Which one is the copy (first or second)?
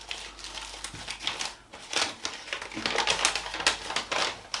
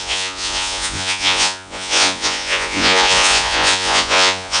second